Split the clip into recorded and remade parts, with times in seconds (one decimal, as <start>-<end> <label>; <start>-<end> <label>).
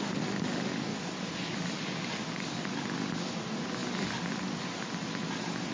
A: 0.0-5.7 recorded